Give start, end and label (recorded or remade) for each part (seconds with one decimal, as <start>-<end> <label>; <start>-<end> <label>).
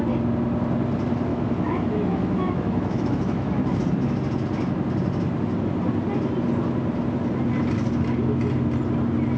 0.0-1.3 recorded; 1.3-3.8 remade; 3.8-9.4 recorded